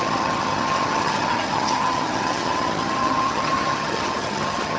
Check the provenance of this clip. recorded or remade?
remade